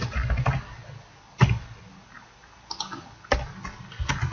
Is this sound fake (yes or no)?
no